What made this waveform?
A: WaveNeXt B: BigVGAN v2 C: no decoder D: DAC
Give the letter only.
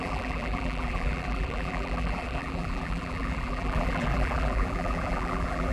B